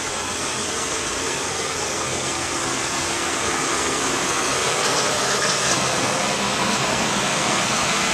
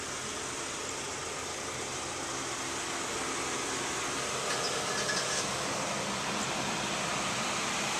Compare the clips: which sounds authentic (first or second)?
second